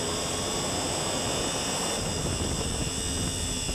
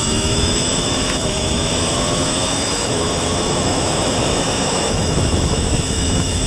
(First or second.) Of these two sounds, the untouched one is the first